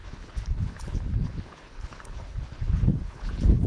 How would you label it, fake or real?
fake